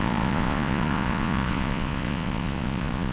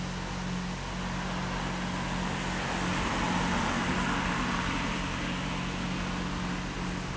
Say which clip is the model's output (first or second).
first